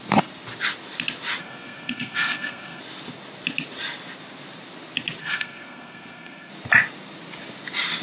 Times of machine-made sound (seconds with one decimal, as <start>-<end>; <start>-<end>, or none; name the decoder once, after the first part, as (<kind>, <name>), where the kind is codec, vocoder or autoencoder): 1.4-2.8 (codec, SNAC); 5.2-6.5

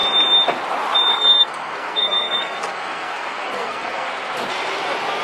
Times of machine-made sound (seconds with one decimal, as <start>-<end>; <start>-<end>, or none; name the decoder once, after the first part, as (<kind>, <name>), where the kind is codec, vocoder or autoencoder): 1.1-4.1 (codec, SNAC)

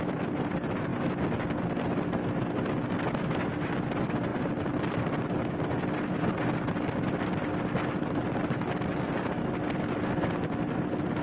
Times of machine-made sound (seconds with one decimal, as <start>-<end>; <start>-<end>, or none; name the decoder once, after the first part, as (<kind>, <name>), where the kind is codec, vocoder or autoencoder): none

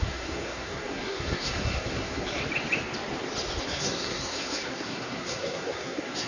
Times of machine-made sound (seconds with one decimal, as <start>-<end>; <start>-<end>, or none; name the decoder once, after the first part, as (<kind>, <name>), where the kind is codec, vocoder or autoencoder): 0.0-2.4 (codec, SNAC); 3.6-6.3